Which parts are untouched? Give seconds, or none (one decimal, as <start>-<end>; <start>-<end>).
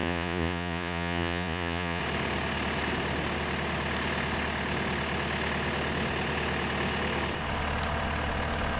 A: 2.0-8.8